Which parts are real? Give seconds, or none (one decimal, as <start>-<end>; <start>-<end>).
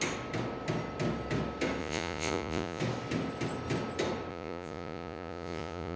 0.0-1.8; 2.8-4.3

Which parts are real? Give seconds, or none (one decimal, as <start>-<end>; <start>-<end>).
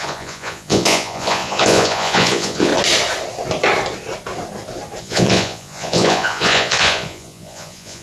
2.7-5.0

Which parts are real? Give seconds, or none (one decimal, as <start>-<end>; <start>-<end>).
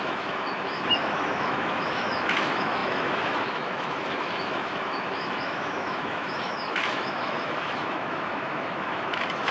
none